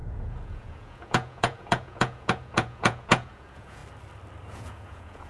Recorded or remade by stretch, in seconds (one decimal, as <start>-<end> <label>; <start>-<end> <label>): 0.0-3.8 remade; 3.8-4.5 recorded; 4.5-5.3 remade